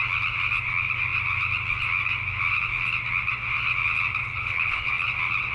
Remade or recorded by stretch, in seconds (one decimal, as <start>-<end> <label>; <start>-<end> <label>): 0.0-4.2 recorded; 4.2-4.9 remade; 4.9-5.5 recorded